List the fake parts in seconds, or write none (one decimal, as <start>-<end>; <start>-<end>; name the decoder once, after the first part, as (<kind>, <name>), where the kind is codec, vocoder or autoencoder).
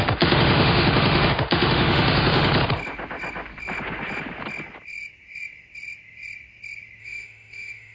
0.0-2.5 (autoencoder, DAC-VAE); 7.0-7.9